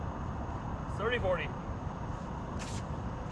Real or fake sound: real